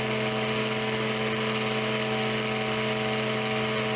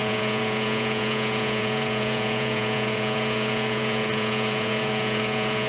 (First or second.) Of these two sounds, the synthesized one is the second